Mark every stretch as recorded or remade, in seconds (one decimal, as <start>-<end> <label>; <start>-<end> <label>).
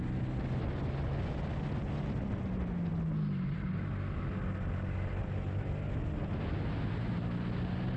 0.0-8.0 recorded